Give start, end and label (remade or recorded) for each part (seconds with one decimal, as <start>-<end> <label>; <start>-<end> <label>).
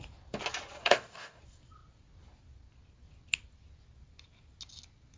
0.0-0.8 recorded; 0.8-1.4 remade; 1.4-5.2 recorded